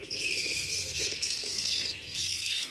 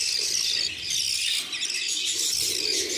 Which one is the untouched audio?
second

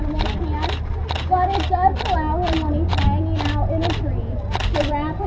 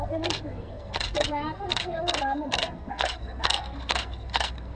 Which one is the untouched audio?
first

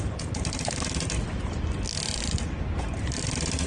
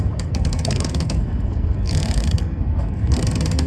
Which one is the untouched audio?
first